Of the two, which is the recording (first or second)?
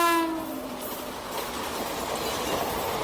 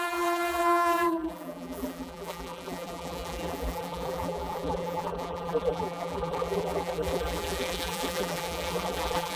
first